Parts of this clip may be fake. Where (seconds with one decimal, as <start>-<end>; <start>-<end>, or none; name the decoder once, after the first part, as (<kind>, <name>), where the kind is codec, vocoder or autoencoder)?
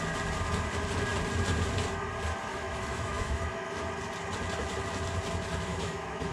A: 2.5-3.8 (autoencoder, DAC-VAE); 5.7-6.3